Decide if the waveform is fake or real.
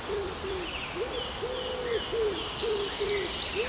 real